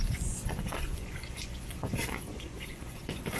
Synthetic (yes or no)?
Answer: yes